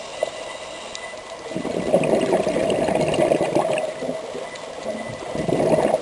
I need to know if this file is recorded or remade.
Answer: recorded